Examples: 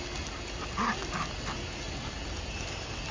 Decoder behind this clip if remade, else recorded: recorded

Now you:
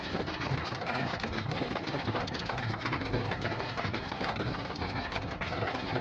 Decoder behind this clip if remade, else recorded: remade, codec, SNAC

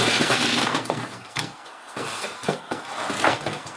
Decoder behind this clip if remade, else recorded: remade, codec, SNAC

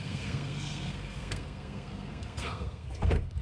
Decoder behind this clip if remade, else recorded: remade, codec, SNAC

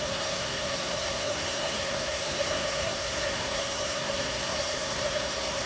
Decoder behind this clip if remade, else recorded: remade, codec, SNAC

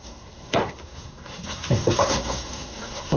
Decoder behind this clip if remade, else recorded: remade, codec, SNAC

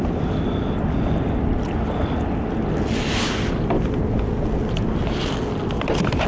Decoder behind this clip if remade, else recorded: recorded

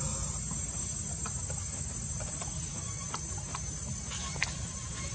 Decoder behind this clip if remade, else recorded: recorded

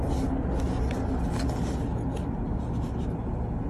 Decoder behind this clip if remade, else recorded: recorded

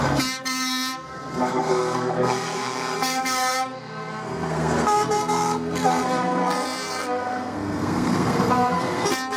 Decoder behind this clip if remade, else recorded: remade, codec, SNAC